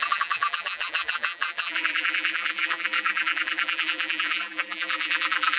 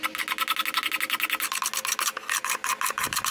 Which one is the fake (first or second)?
first